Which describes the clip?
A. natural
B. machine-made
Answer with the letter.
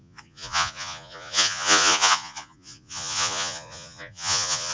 B